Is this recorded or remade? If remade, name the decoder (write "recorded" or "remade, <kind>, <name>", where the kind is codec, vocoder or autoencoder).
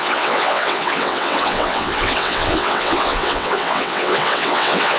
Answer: remade, vocoder, WaveNeXt